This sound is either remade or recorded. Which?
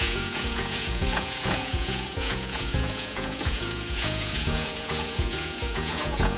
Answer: remade